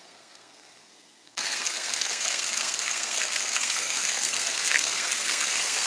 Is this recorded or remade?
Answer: remade